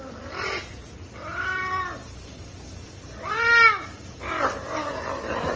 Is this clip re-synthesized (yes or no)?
no